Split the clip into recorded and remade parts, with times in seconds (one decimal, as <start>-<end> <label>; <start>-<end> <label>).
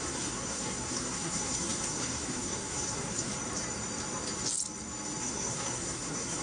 0.0-3.3 remade; 3.3-5.2 recorded; 5.2-6.4 remade